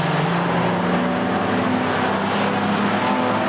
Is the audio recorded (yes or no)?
yes